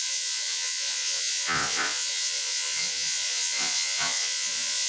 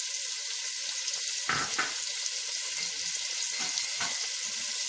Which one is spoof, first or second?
first